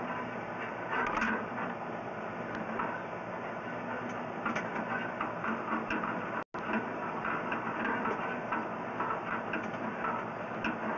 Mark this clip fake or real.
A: real